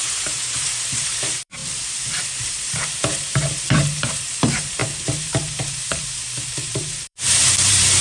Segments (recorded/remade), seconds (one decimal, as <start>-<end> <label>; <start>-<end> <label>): 0.0-1.6 remade; 1.6-2.2 recorded; 2.2-8.0 remade